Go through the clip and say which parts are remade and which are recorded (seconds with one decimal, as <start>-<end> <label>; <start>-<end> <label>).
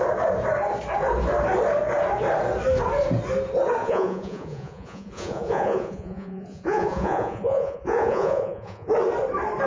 0.0-3.8 recorded; 3.8-8.9 remade; 8.9-9.7 recorded